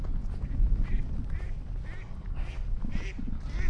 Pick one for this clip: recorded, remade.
recorded